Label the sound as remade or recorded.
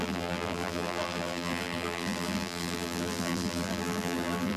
remade